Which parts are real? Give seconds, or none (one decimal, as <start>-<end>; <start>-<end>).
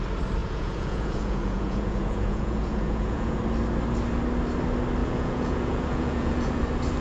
0.0-0.4; 3.3-5.0; 6.6-7.0